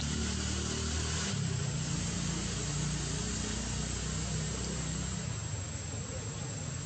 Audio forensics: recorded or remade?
recorded